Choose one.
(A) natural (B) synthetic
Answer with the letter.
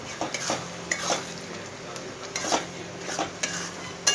A